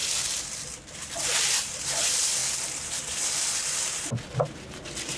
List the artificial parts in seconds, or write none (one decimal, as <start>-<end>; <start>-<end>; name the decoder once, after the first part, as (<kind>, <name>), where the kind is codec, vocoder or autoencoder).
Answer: none